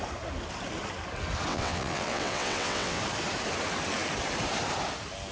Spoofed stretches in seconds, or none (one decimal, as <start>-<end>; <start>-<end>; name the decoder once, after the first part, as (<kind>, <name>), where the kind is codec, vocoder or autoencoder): 1.5-3.0 (vocoder, WaveNeXt)